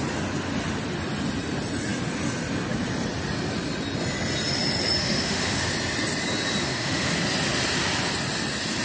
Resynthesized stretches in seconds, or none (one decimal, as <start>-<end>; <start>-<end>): 5.0-5.6; 6.6-7.1